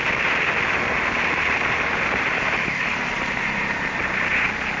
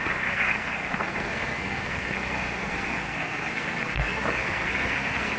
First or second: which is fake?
second